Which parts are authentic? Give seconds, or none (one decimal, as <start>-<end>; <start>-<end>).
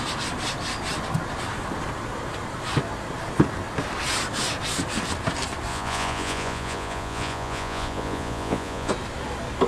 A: 0.0-5.7; 8.9-9.7